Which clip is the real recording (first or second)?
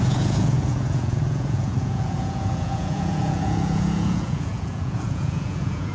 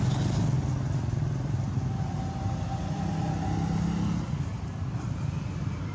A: second